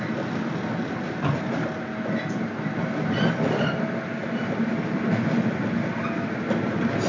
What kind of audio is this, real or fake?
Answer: real